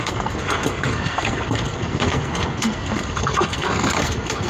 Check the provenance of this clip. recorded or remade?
remade